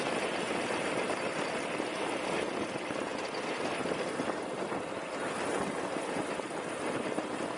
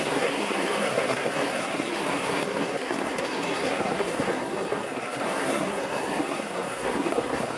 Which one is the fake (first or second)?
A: second